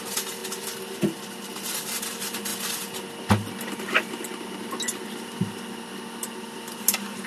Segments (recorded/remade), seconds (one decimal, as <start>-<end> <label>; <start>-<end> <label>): 0.0-7.3 recorded